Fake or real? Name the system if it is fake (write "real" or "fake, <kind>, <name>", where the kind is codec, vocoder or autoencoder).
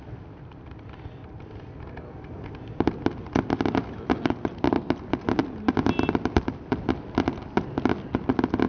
real